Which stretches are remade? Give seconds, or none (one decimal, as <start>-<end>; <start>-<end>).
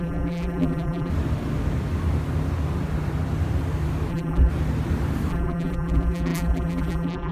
0.0-1.1; 4.1-4.5; 5.3-7.3